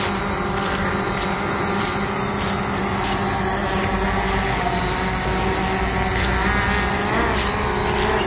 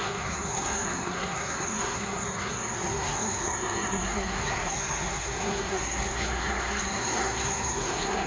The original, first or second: first